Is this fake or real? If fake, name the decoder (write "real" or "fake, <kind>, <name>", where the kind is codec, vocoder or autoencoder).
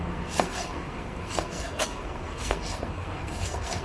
fake, codec, SNAC